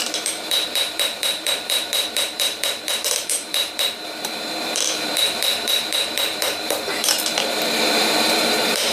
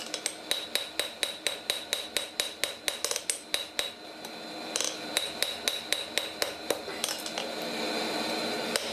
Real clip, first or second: second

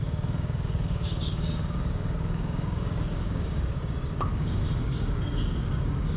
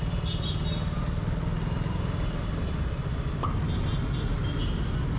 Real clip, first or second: second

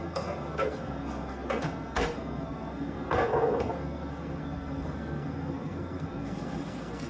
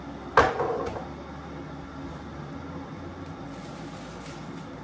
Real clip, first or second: second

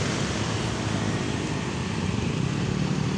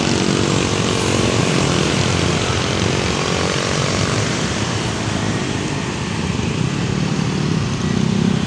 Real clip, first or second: first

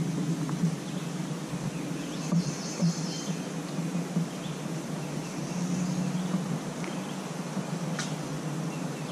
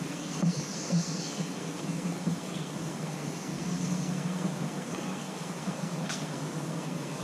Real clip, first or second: first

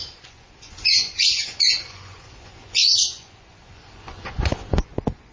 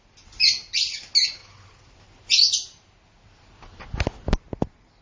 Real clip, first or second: second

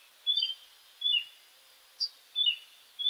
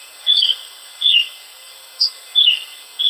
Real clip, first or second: first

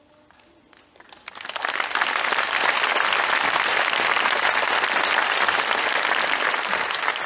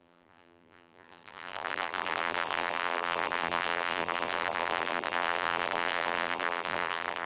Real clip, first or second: first